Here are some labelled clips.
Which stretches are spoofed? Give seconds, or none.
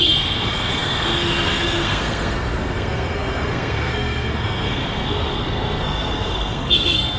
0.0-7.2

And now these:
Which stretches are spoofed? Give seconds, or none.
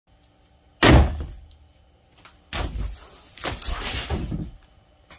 none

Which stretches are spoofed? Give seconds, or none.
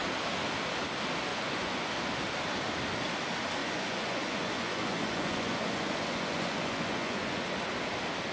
1.3-1.9; 3.6-7.4